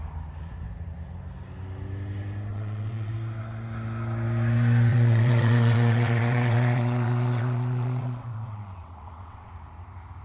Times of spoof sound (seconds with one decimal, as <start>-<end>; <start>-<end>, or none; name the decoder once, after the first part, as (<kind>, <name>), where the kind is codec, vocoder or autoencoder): 2.5-3.1 (vocoder, WaveNeXt); 4.9-9.5